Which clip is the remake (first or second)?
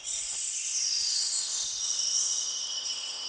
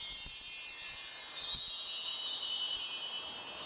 first